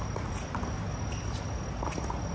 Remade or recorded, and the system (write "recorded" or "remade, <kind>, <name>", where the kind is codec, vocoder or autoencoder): recorded